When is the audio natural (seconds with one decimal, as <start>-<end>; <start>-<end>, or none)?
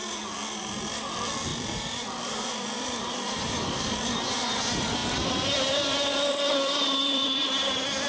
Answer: 0.0-1.5; 3.8-5.0; 7.5-8.1